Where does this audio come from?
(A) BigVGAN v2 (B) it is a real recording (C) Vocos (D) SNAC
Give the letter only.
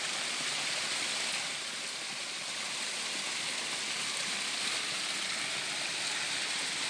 B